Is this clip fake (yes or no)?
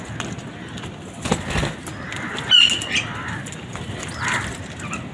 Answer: no